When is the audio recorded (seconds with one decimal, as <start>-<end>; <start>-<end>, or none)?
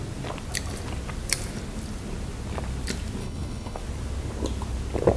0.0-3.2; 3.8-5.2